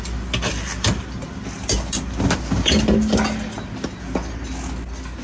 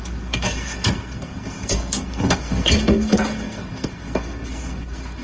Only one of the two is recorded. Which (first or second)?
first